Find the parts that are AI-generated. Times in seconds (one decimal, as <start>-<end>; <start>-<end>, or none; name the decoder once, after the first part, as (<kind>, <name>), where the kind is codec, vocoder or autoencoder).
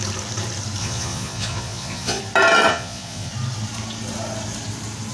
0.8-2.2 (vocoder, Vocos); 2.7-3.3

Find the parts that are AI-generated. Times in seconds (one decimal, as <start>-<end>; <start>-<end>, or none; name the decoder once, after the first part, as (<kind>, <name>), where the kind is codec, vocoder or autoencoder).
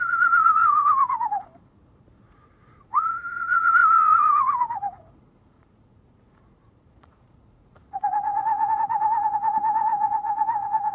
0.0-10.9 (vocoder, Vocos)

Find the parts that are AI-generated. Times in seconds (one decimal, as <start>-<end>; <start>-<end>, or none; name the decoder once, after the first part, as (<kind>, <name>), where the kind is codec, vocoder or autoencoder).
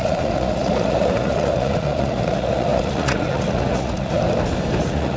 0.0-4.2 (vocoder, Vocos); 4.8-5.2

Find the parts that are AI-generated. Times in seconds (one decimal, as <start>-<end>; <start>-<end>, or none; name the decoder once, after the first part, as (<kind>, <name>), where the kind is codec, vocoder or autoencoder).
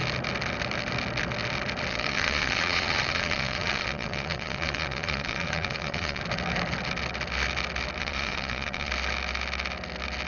1.9-6.2 (vocoder, Vocos); 8.0-8.9